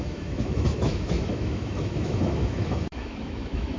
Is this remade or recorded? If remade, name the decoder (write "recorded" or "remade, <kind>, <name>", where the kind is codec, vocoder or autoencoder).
remade, autoencoder, DAC-VAE